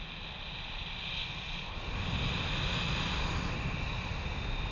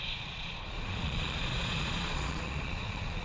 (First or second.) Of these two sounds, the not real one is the second